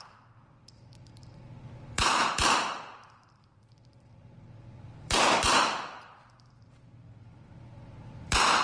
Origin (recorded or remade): remade